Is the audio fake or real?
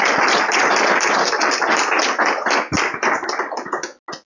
real